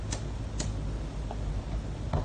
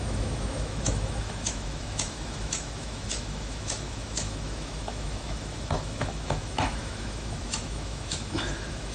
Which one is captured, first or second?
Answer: first